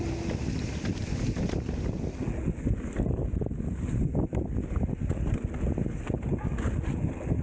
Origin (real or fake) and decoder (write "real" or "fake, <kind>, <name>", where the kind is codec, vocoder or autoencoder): real